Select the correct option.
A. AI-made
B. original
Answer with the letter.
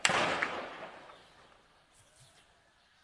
A